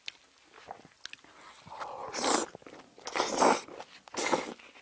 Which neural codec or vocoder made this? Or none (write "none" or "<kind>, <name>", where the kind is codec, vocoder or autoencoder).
none